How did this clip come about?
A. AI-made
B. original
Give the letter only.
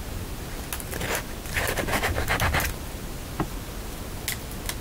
B